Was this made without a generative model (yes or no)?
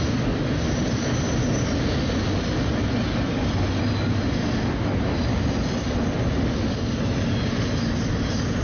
yes